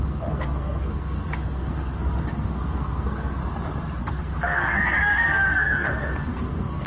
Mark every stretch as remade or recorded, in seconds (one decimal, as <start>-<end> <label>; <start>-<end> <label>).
0.0-3.4 remade; 3.4-4.0 recorded; 4.0-6.9 remade